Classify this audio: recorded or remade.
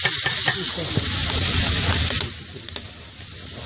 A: recorded